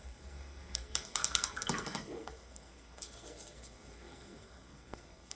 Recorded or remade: remade